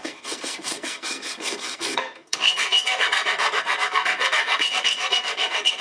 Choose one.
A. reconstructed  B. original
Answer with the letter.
A